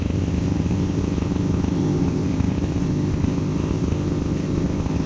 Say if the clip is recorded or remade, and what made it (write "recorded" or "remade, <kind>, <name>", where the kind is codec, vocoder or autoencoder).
remade, codec, ZipCodec